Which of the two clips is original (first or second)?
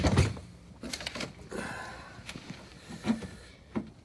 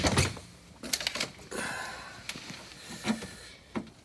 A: second